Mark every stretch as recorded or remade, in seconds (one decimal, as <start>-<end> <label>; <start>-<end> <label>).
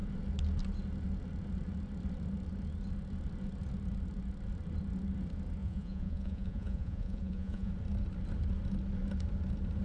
0.0-5.6 recorded; 5.6-7.7 remade; 7.7-9.8 recorded